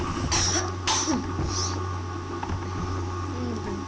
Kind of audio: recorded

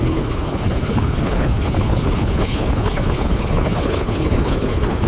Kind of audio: remade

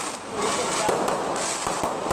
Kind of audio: recorded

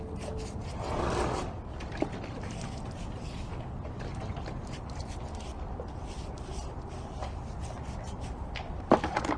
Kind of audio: recorded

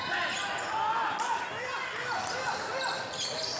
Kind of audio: recorded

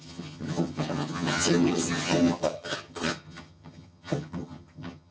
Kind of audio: remade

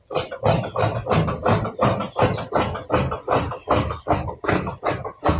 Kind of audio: recorded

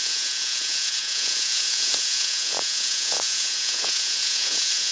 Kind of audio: remade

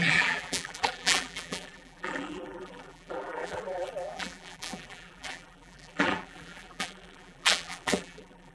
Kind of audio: remade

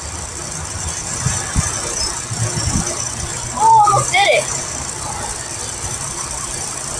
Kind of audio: remade